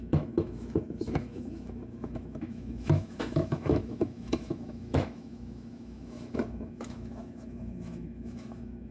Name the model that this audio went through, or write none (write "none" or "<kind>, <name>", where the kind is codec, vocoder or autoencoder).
autoencoder, DAC-VAE